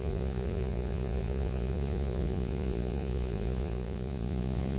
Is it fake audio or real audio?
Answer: fake